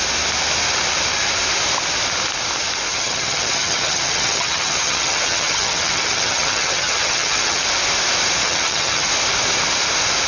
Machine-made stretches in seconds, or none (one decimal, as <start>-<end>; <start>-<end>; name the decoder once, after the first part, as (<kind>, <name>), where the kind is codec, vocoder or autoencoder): 2.9-7.6 (vocoder, HiFi-GAN); 8.4-9.1